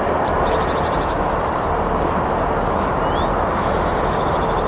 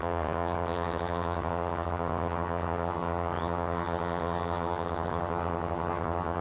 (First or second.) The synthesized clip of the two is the second